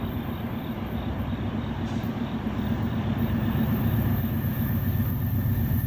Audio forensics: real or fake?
fake